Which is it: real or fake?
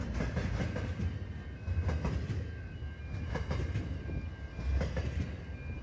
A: real